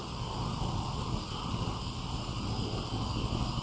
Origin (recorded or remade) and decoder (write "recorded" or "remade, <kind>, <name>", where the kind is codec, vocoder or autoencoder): recorded